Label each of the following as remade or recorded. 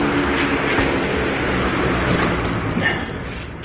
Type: recorded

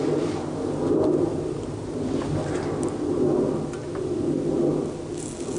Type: recorded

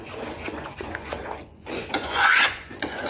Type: remade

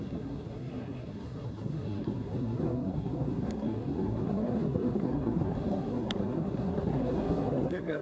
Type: remade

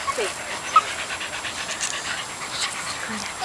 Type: recorded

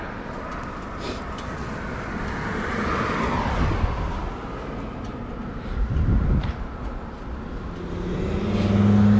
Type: recorded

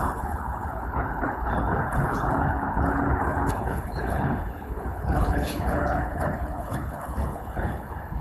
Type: remade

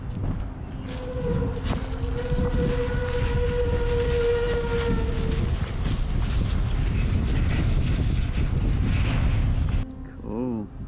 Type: recorded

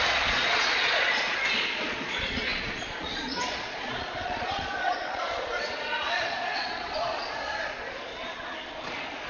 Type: remade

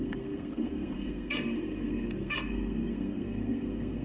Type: remade